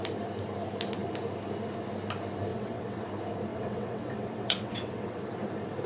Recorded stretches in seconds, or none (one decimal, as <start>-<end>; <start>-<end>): 0.0-2.5; 3.1-3.5; 5.2-5.9